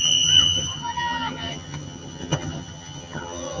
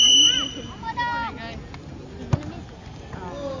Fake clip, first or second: first